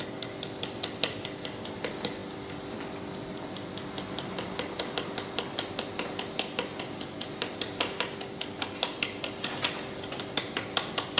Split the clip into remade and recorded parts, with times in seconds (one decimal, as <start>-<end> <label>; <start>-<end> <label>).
0.0-11.2 recorded